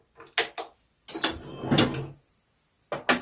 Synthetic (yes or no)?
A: no